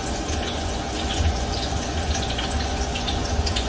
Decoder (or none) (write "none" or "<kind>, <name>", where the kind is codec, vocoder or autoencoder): vocoder, Vocos